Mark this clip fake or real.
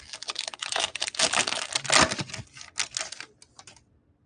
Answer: real